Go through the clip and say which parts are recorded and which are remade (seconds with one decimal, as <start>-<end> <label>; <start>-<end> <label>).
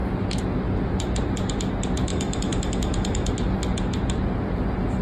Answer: 0.0-2.1 recorded; 2.1-3.3 remade; 3.3-5.0 recorded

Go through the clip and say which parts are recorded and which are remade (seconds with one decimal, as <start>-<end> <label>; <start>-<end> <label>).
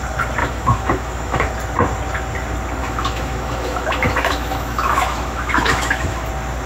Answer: 0.0-0.4 recorded; 0.4-1.5 remade; 1.5-2.8 recorded; 2.8-6.3 remade; 6.3-6.7 recorded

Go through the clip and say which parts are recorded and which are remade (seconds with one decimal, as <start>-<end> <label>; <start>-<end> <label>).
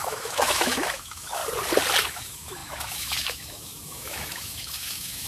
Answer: 0.0-1.4 remade; 1.4-2.0 recorded; 2.0-5.3 remade